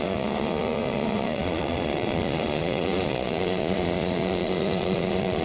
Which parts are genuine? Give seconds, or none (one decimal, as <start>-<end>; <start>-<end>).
none